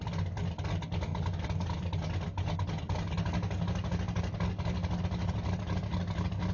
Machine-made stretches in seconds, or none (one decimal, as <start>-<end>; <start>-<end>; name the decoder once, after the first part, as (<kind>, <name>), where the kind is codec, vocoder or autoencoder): none